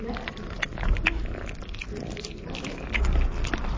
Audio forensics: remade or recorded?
recorded